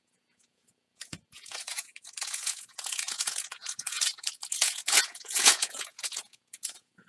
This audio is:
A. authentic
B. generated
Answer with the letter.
B